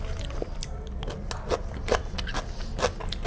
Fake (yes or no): no